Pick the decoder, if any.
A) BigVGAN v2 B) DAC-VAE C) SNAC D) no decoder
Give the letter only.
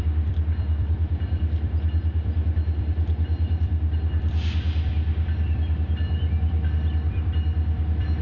A